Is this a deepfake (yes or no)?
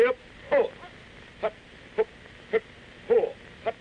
no